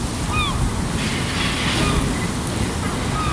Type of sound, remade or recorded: recorded